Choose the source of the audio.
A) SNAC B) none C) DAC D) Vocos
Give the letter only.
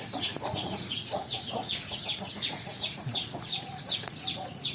D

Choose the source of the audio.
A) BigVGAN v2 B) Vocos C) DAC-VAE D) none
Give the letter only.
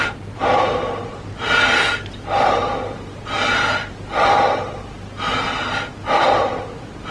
D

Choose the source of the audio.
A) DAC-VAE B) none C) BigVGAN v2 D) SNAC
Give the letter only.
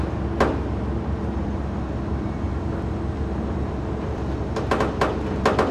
B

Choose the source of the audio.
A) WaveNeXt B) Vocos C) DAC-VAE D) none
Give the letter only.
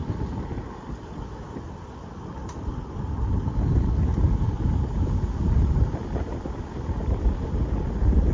D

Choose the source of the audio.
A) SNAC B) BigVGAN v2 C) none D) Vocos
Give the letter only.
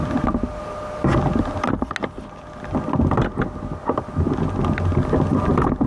C